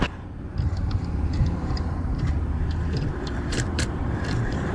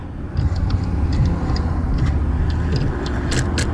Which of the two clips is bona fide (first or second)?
second